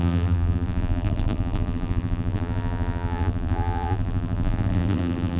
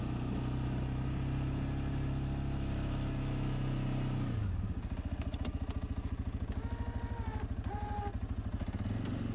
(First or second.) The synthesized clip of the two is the first